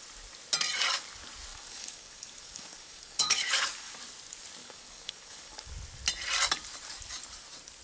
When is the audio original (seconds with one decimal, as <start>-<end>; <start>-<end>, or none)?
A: 0.0-1.5; 4.0-4.6; 5.7-7.8